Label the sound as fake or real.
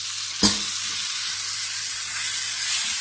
real